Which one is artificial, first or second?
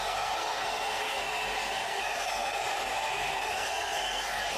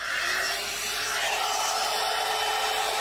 first